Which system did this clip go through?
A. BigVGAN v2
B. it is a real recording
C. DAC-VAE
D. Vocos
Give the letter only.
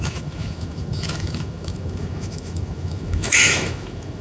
C